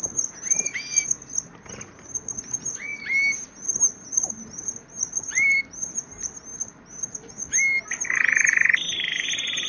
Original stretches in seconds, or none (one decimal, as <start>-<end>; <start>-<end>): 0.0-9.7